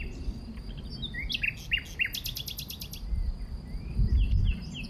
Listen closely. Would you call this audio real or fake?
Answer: real